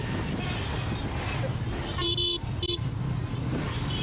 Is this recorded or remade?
recorded